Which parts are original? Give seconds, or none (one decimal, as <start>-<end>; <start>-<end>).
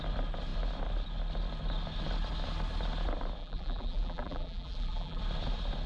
0.0-3.4; 5.2-5.9